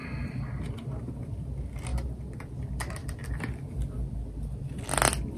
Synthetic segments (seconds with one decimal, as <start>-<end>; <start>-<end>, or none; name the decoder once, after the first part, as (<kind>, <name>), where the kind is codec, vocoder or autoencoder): 1.9-2.5 (vocoder, BigVGAN v2); 3.0-3.7